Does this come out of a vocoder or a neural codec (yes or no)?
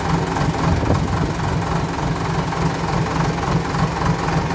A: no